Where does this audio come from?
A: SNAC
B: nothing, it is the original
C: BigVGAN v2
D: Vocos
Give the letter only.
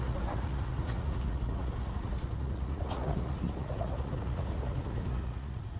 D